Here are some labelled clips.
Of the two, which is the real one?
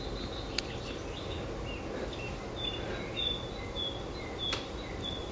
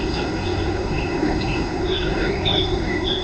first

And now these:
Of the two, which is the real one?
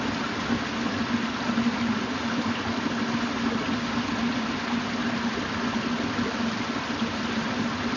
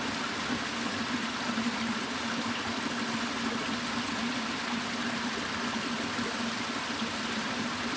first